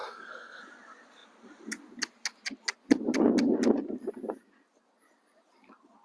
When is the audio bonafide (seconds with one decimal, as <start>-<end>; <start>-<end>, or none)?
0.6-6.0